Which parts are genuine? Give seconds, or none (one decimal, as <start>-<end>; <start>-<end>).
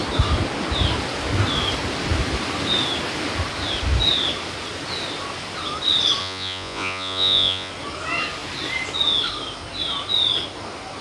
0.0-6.2; 7.7-11.0